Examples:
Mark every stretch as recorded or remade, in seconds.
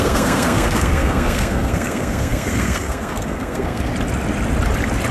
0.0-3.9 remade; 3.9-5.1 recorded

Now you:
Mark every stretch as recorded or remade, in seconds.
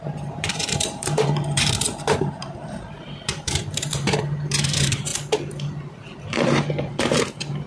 0.0-5.1 remade; 5.1-5.9 recorded; 5.9-7.7 remade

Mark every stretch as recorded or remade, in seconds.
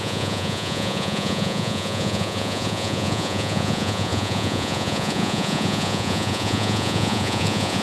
0.0-7.8 remade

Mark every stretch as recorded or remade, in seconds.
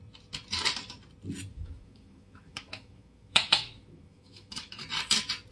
0.0-1.5 recorded; 1.5-4.8 remade; 4.8-5.5 recorded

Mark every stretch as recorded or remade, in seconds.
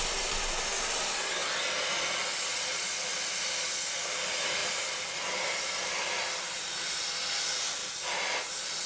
0.0-1.4 remade; 1.4-2.4 recorded; 2.4-3.1 remade; 3.1-4.1 recorded; 4.1-7.8 remade; 7.8-8.5 recorded; 8.5-8.9 remade